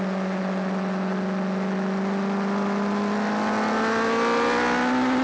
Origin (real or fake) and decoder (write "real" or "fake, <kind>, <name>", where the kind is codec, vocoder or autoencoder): real